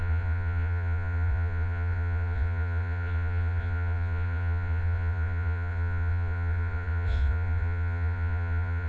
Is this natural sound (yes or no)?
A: no